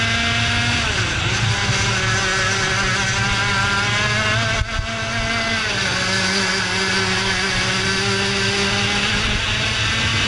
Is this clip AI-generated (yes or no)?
no